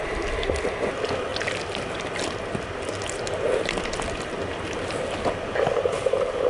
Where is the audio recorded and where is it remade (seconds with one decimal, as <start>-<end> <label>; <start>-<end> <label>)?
0.0-6.5 recorded